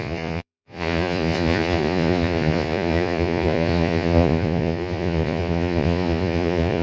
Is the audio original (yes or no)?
no